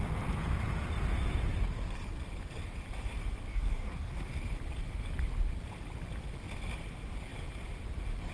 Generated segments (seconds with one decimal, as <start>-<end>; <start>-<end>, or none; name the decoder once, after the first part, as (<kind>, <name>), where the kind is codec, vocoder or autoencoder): 3.5-4.3 (codec, DAC)